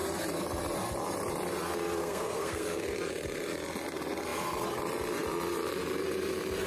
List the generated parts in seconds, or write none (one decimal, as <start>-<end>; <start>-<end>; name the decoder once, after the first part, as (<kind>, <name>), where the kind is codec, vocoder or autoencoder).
2.0-2.8 (codec, SNAC)